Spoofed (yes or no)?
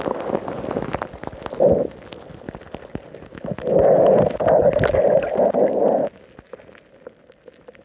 no